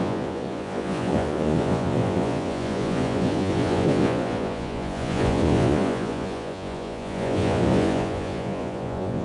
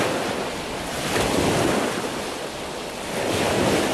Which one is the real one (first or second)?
second